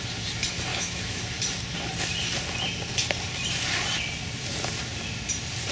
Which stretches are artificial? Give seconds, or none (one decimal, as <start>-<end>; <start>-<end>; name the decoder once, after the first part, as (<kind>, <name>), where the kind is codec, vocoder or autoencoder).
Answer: 0.7-1.2 (autoencoder, DAC-VAE)